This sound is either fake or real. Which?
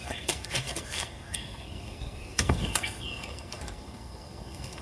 fake